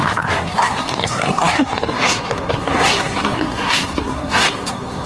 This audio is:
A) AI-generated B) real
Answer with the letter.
A